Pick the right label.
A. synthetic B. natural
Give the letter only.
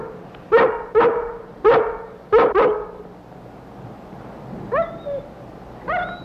B